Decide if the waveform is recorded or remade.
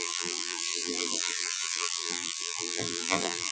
remade